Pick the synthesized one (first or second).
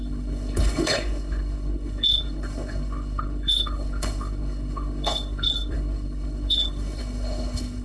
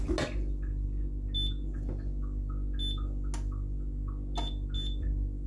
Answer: first